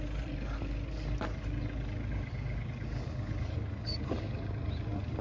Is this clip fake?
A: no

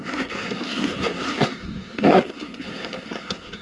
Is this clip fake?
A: yes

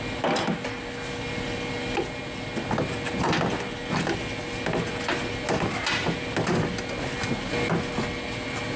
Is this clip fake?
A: no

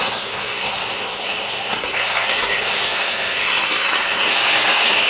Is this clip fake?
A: yes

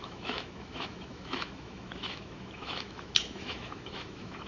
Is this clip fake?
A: yes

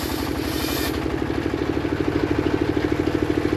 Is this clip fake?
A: no